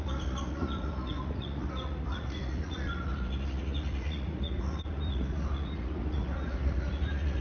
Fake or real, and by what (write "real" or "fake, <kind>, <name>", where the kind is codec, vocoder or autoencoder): fake, vocoder, Vocos